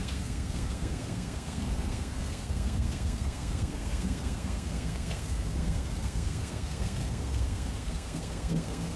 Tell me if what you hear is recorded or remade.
remade